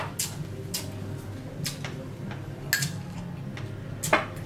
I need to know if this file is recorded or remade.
recorded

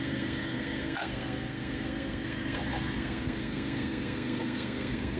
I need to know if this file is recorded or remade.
remade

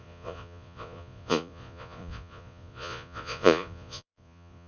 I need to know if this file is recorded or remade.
remade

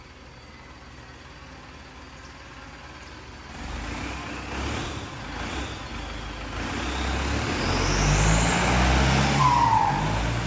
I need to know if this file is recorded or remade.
recorded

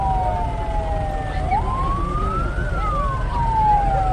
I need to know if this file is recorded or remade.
recorded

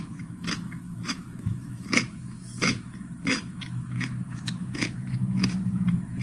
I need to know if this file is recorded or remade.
remade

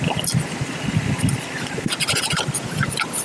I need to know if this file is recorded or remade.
recorded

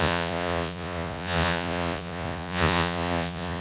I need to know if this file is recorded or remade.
remade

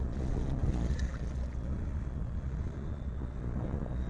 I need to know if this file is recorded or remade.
remade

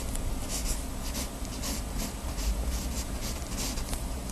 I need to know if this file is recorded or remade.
recorded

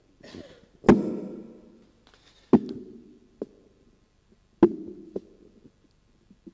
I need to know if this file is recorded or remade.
recorded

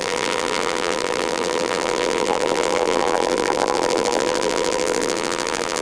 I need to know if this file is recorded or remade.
remade